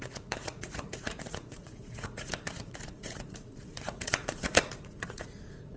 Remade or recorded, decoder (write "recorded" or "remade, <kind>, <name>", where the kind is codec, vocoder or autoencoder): remade, vocoder, Vocos